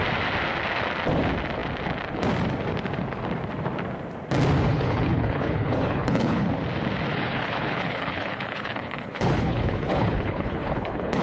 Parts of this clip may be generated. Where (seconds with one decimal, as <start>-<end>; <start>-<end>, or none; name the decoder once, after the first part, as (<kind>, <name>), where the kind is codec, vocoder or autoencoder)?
4.7-6.5 (codec, HILCodec); 7.1-11.2